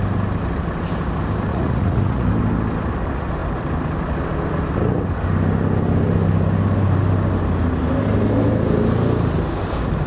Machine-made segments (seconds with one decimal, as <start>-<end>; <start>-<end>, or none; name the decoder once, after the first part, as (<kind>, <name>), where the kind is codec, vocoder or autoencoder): 1.5-2.3 (vocoder, Vocos)